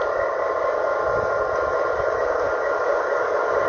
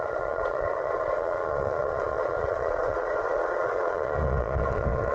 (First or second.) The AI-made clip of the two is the second